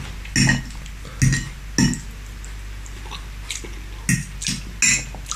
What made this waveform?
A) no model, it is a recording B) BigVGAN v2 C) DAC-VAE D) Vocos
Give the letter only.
A